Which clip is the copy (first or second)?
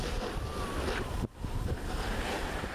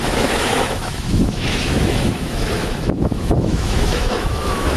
second